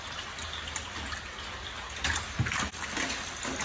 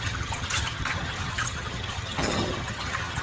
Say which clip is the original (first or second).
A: first